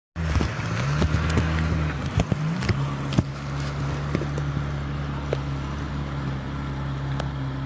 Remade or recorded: recorded